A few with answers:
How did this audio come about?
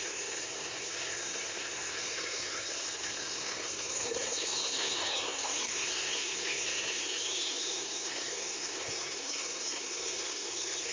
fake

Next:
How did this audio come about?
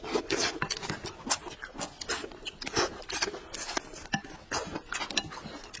real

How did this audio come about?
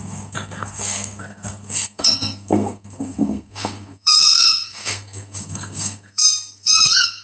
fake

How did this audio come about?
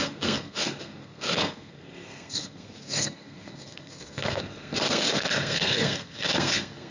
fake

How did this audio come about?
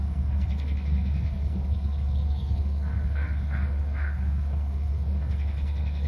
fake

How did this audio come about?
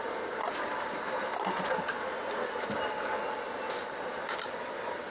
real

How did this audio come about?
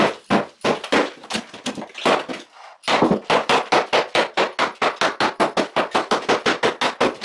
real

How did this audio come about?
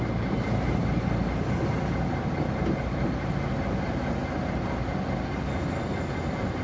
real